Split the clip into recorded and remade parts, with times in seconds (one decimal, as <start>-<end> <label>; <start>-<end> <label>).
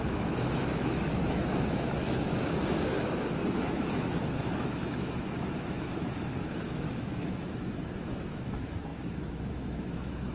0.0-10.3 remade